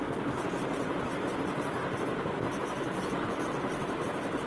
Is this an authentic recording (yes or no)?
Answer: no